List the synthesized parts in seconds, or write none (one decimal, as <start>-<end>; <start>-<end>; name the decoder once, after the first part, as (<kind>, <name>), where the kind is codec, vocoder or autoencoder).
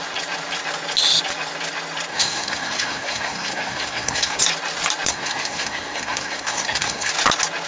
2.1-4.4 (codec, SNAC); 5.1-7.1